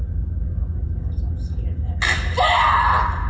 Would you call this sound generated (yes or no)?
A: no